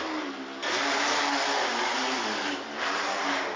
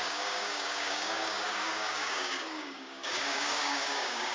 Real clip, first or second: first